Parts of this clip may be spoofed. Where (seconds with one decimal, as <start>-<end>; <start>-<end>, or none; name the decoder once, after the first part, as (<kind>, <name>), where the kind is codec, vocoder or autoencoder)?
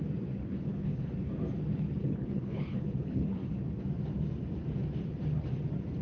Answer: 0.4-1.1 (codec, HILCodec); 2.0-3.6